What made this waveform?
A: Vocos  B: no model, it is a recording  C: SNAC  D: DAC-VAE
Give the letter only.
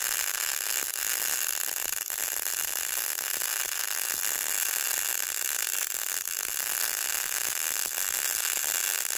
B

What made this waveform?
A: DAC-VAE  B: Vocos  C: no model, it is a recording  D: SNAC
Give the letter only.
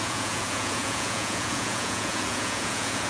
B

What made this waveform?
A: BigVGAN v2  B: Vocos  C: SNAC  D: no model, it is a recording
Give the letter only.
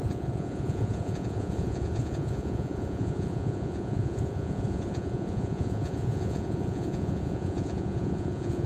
B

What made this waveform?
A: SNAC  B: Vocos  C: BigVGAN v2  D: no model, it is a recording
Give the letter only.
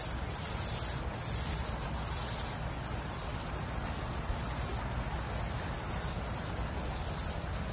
D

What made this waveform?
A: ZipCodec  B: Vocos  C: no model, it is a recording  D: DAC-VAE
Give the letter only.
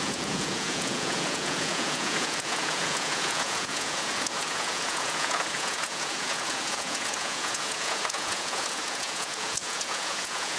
B